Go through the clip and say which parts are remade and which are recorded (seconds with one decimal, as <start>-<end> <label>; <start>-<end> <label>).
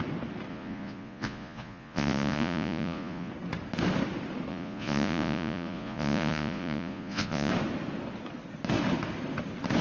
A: 0.0-0.5 recorded; 0.5-3.3 remade; 3.3-4.5 recorded; 4.5-7.5 remade; 7.5-9.8 recorded